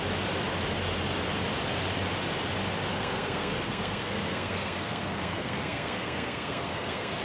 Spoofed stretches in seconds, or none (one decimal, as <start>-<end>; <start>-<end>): 2.9-7.2